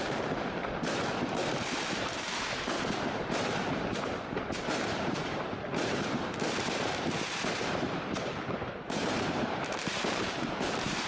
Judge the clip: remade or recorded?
remade